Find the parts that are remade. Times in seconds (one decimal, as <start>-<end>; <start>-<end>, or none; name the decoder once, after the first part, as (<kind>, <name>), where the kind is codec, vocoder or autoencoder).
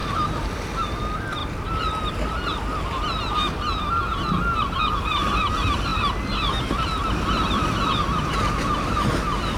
0.0-0.9 (vocoder, BigVGAN v2)